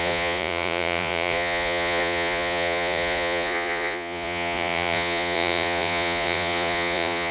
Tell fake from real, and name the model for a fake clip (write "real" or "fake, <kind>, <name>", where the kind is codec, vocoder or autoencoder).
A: fake, vocoder, Vocos